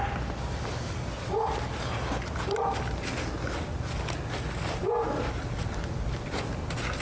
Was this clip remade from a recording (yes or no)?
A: no